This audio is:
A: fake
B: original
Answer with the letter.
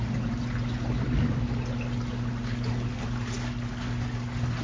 B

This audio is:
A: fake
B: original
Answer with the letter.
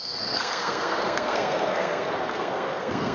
A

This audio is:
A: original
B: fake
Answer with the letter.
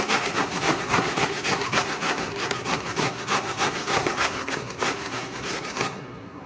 B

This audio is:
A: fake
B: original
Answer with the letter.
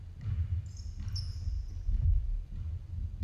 B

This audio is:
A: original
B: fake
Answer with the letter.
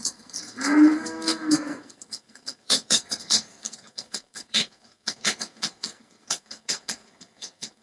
B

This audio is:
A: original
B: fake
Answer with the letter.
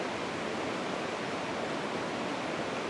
A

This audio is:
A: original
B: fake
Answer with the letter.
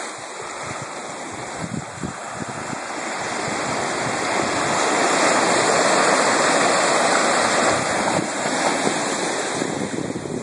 A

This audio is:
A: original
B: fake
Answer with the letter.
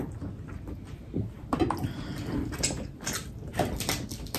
A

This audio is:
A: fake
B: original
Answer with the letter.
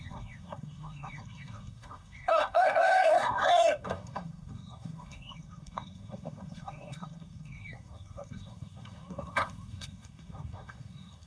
A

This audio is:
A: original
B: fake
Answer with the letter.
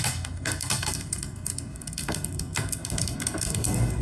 B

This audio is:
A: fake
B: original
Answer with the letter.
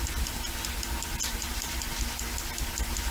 B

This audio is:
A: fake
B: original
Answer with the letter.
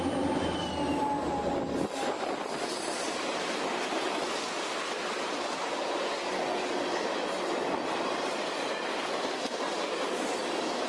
B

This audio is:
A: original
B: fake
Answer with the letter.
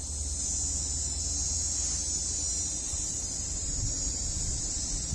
A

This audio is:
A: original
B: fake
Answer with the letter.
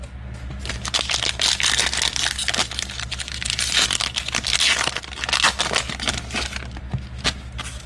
A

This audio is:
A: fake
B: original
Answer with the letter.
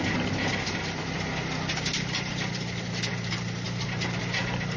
B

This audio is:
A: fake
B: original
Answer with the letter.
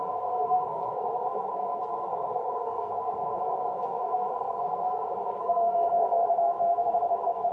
A